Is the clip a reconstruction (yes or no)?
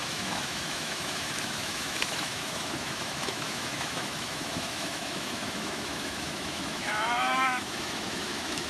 yes